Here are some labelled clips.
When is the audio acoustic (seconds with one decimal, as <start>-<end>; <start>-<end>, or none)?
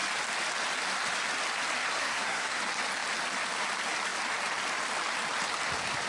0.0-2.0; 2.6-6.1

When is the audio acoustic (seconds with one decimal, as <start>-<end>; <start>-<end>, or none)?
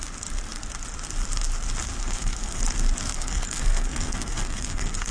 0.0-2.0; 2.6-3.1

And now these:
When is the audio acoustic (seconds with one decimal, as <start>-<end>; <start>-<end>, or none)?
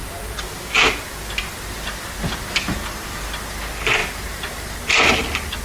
0.0-2.6; 3.3-5.6